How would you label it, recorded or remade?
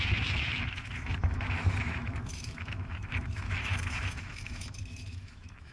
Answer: remade